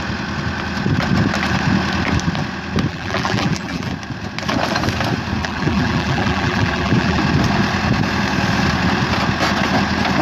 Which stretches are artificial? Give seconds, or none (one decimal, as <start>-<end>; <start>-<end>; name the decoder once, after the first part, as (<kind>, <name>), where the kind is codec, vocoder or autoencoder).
2.9-3.9 (vocoder, BigVGAN v2); 5.4-7.2